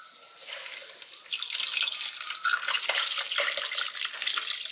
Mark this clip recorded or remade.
recorded